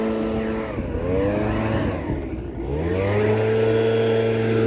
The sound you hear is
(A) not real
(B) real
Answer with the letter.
B